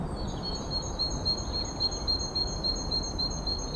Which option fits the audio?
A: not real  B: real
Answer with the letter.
B